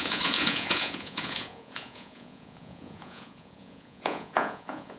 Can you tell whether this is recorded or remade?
remade